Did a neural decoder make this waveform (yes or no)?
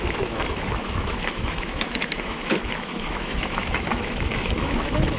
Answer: yes